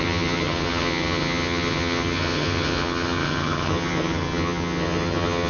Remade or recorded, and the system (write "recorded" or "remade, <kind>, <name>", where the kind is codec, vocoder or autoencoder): remade, vocoder, HiFi-GAN